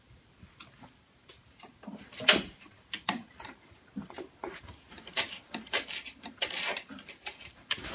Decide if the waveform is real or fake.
fake